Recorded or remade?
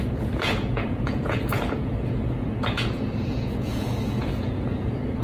remade